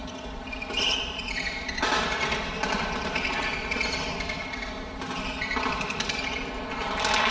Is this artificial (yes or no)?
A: no